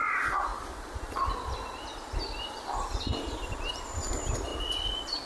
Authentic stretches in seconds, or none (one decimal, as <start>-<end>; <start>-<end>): 0.0-5.3